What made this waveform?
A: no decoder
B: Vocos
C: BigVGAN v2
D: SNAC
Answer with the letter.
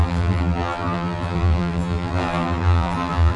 C